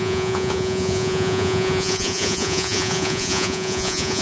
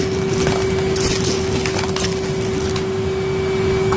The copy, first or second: first